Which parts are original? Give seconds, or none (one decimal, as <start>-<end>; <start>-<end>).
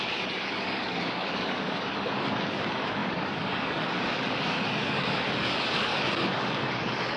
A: none